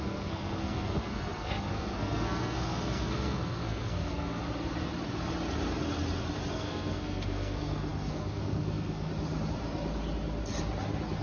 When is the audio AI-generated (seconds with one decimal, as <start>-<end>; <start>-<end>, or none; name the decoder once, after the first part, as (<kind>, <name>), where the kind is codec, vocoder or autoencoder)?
0.0-4.4 (codec, SNAC); 6.5-9.1